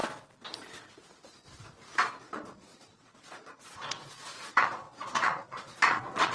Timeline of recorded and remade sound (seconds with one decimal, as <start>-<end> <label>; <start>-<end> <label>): 0.0-2.2 recorded; 2.2-6.3 remade